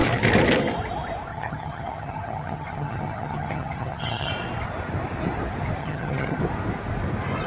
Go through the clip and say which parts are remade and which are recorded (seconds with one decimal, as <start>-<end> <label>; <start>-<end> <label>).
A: 0.0-1.3 recorded; 1.3-4.3 remade; 4.3-5.8 recorded; 5.8-6.4 remade; 6.4-7.5 recorded